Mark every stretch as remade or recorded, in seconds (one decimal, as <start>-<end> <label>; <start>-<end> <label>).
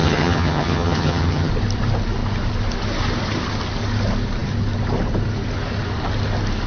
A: 0.0-1.5 remade; 1.5-6.7 recorded